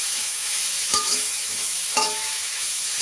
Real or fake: fake